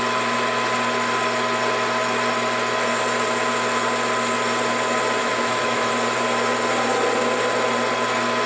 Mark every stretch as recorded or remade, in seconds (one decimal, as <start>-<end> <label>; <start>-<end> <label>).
0.0-5.2 recorded; 5.2-5.9 remade; 5.9-8.5 recorded